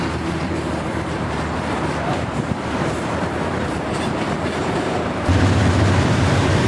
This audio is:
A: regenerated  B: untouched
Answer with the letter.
A